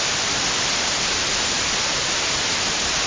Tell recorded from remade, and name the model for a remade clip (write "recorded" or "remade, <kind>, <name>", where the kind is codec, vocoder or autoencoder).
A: recorded